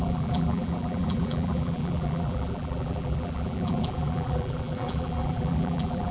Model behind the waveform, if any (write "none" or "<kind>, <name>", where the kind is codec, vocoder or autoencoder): vocoder, BigVGAN v2